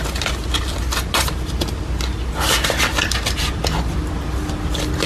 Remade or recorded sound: recorded